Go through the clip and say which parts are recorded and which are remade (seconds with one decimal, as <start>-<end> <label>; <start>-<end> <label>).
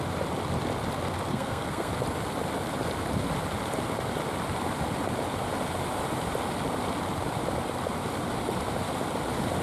0.0-1.3 recorded; 1.3-1.9 remade; 1.9-9.6 recorded